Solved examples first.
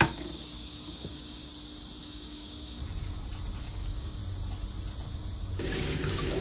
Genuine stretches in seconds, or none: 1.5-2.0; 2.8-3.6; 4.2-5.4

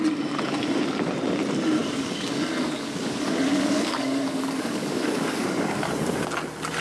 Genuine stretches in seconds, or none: 0.0-1.8; 5.9-6.8